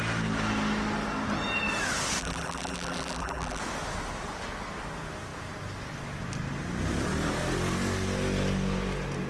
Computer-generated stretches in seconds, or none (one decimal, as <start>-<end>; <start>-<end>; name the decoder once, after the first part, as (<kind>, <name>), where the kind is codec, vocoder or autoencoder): 2.2-3.6 (vocoder, BigVGAN v2)